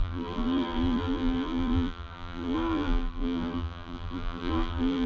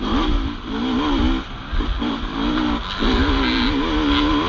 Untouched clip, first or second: second